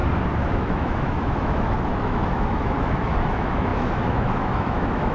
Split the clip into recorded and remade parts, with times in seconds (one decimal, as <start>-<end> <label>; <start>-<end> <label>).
0.0-0.5 recorded; 0.5-5.1 remade